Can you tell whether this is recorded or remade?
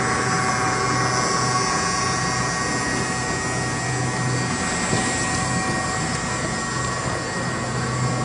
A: recorded